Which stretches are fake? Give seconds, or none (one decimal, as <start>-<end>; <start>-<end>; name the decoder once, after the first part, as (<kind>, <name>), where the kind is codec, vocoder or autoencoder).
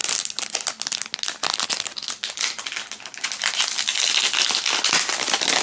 none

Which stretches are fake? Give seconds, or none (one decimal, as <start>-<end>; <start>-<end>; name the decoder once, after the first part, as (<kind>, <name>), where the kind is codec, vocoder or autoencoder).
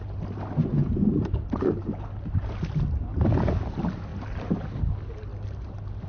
0.8-2.6 (vocoder, BigVGAN v2); 4.1-4.8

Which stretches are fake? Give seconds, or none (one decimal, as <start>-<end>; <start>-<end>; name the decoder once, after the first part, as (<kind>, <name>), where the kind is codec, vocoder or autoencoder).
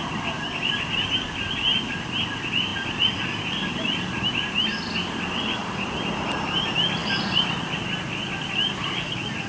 none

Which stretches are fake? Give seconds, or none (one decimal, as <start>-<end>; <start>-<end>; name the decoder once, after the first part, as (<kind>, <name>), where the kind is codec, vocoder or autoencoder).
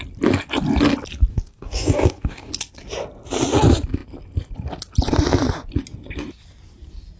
1.3-2.5 (codec, DAC)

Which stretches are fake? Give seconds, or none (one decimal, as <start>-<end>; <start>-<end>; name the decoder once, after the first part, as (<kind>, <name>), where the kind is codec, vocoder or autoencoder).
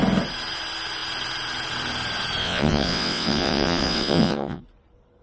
2.4-4.6 (vocoder, WaveNeXt)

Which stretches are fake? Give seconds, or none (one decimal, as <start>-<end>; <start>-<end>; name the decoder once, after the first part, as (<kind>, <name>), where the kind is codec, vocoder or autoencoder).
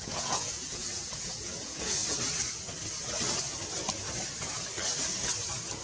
0.0-2.0 (vocoder, Vocos)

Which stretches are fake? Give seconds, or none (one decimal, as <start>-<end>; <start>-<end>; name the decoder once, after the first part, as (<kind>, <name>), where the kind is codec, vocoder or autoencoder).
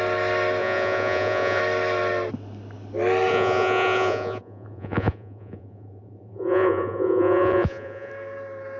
0.6-1.6 (vocoder, Vocos); 3.3-8.1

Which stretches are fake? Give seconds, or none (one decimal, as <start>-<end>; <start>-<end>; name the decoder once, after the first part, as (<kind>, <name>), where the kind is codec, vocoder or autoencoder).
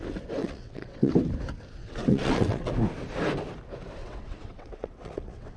0.4-1.1 (vocoder, WaveNeXt); 1.8-2.7; 4.0-5.6